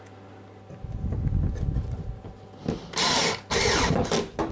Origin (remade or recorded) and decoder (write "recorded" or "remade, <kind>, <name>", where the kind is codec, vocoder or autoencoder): recorded